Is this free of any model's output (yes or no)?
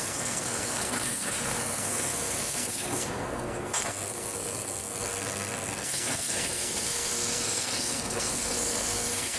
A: no